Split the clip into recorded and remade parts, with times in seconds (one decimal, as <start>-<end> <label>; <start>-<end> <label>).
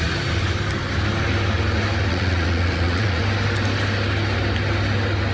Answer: 0.0-2.1 recorded; 2.1-3.2 remade; 3.2-5.3 recorded